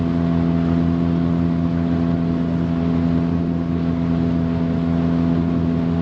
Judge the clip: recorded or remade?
recorded